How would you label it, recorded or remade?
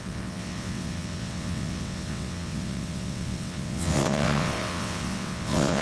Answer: remade